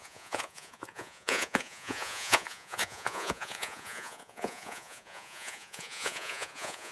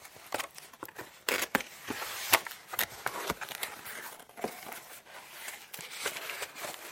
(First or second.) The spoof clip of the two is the first